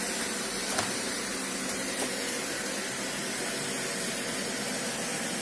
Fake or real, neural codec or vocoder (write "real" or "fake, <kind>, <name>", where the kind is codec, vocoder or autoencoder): real